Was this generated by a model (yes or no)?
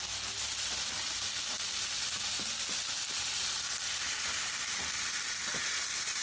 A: no